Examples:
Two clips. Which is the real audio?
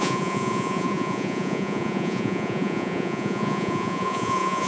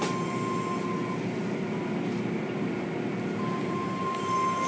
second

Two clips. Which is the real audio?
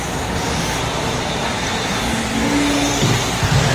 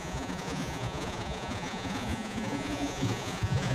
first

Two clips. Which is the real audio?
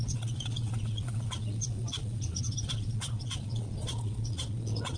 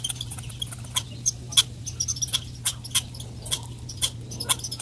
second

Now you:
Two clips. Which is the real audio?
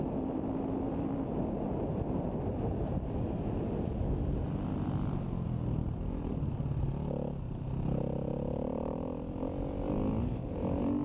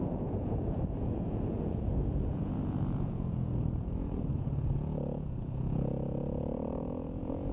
first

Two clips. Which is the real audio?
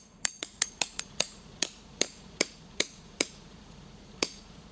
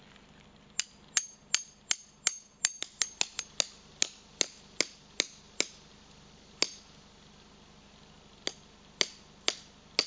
second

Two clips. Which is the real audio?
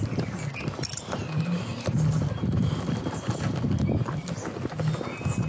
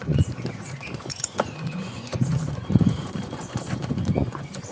first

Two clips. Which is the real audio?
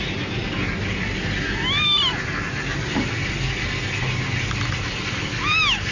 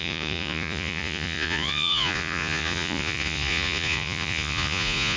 first